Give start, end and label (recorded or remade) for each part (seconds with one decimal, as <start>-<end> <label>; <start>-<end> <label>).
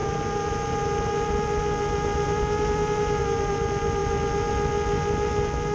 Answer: 0.0-5.7 recorded